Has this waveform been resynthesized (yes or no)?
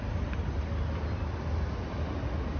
no